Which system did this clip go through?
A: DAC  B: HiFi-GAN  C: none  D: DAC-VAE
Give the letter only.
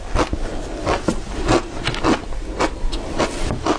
C